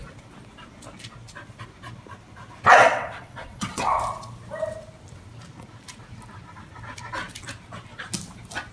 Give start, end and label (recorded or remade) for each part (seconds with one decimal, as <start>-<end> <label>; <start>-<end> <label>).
0.0-2.8 recorded; 2.8-4.0 remade; 4.0-8.7 recorded